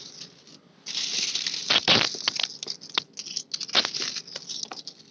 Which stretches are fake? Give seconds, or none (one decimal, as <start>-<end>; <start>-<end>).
none